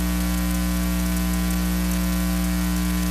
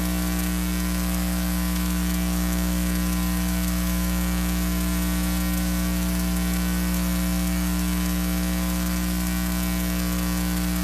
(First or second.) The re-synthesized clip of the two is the second